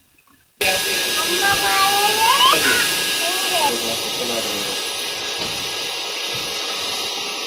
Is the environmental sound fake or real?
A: real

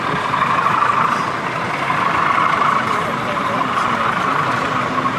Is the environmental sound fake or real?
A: real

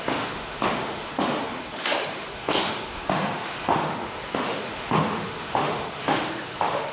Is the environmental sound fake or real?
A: fake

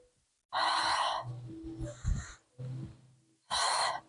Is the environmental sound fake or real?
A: real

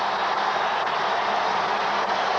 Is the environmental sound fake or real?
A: real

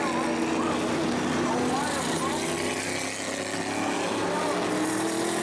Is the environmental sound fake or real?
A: real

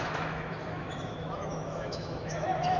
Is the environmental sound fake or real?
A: fake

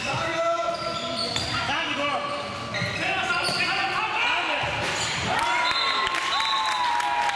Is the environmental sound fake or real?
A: real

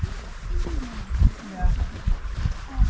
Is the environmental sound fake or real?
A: real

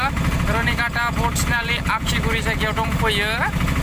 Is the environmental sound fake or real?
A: real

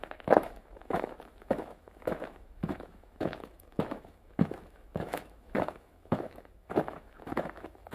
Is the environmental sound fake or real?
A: fake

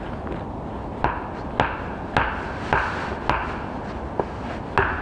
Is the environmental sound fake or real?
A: real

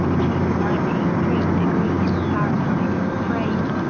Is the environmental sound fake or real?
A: real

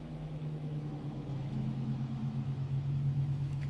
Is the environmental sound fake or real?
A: fake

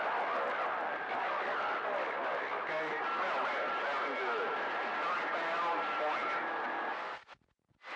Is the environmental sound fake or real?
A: real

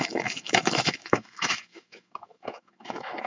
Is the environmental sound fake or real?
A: fake